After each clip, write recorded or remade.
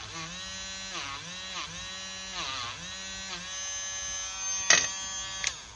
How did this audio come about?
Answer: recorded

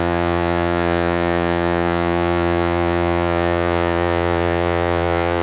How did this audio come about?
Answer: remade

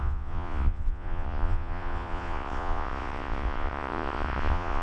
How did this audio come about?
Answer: remade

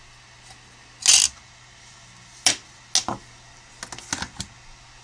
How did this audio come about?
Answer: recorded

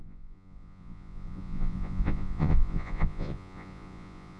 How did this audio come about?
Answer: remade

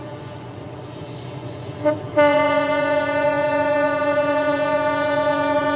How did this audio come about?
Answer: remade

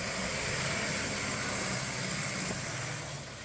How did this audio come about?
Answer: recorded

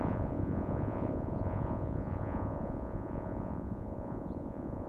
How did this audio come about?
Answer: remade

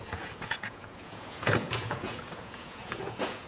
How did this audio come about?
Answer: remade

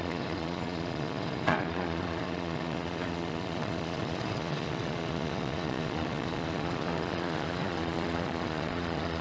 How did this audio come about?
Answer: remade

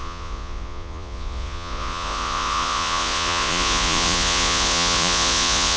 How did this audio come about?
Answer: remade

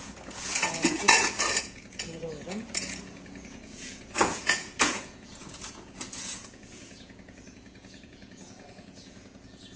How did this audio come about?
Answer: remade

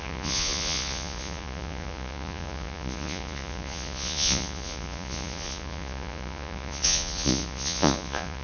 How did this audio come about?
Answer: remade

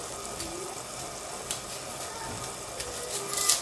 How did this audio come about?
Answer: recorded